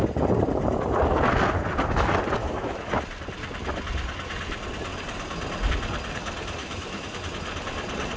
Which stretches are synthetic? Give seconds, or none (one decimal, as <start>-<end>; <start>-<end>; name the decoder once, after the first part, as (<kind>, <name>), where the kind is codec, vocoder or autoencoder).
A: 2.4-2.9 (autoencoder, DAC-VAE); 6.6-7.2